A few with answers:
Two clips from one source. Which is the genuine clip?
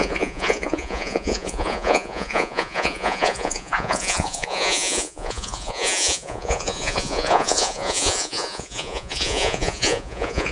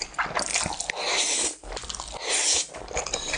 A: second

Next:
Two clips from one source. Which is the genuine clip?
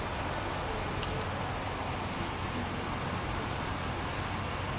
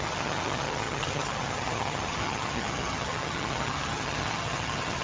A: first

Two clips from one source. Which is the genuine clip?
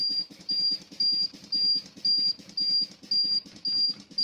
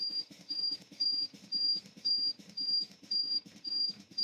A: first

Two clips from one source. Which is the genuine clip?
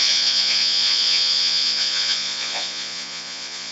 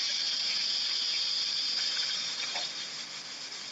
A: second